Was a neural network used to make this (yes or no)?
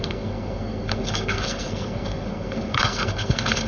yes